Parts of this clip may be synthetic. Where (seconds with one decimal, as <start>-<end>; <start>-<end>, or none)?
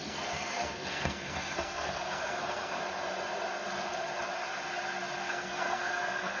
0.0-2.8; 5.3-6.4